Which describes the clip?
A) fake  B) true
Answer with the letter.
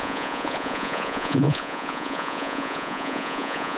A